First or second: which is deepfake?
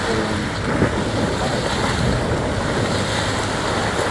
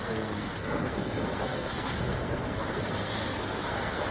second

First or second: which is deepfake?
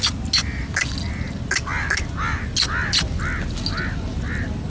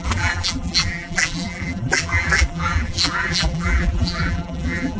second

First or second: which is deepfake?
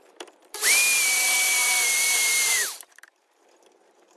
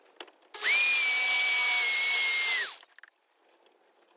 first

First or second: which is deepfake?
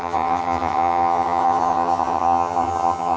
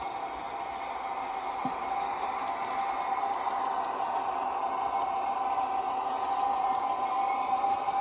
first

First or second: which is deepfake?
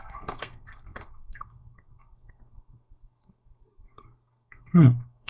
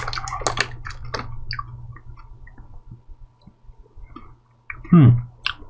first